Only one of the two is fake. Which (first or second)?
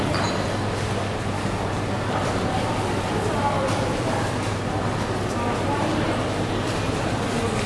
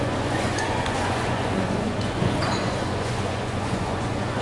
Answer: second